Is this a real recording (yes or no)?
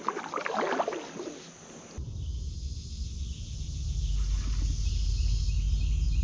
yes